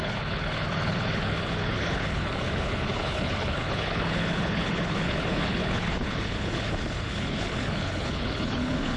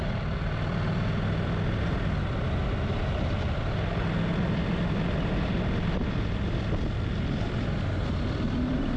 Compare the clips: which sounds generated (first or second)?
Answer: first